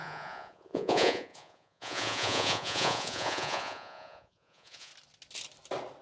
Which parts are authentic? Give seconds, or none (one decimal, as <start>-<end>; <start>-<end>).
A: 4.9-6.0